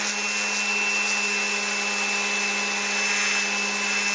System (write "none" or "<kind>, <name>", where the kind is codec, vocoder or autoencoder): none